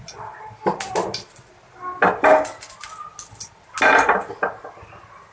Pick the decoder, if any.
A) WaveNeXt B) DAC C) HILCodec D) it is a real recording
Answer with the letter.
D